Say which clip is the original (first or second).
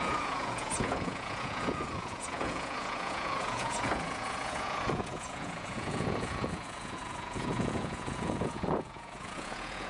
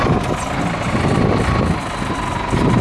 second